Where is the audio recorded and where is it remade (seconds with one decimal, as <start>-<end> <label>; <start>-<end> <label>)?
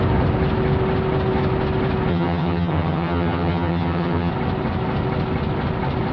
0.0-2.1 recorded; 2.1-4.3 remade; 4.3-6.1 recorded